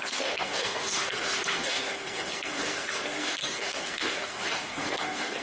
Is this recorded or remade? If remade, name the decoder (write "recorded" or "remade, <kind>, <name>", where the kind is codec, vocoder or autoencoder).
remade, codec, SNAC